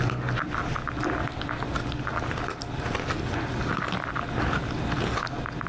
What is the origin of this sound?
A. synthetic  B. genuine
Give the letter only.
B